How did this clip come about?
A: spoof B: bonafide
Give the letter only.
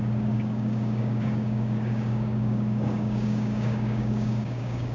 A